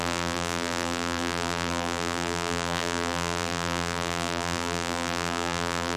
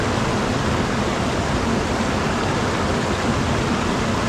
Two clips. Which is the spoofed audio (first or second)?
first